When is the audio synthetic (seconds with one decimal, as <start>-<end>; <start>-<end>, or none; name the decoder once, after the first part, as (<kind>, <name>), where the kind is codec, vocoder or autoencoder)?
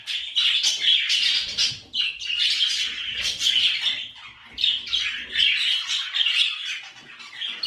none